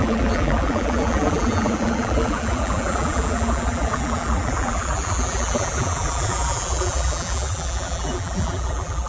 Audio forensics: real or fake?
fake